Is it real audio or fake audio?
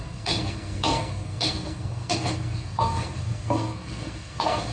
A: fake